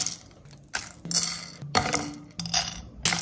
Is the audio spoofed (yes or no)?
no